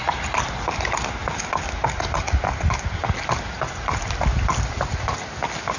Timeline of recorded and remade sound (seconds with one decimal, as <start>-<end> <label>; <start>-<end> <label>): 0.0-5.8 recorded